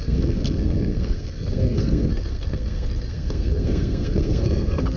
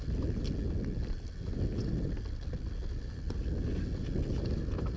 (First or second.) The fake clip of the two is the first